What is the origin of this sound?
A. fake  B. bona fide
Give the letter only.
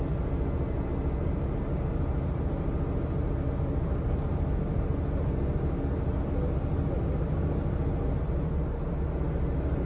B